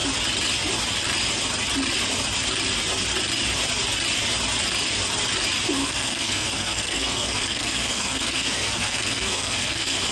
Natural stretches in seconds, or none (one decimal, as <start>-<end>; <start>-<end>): 0.0-5.8